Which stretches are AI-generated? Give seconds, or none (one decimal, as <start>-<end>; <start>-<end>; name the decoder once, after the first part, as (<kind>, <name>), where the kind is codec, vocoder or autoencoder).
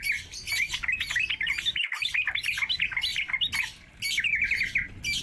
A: 0.0-3.1 (vocoder, BigVGAN v2)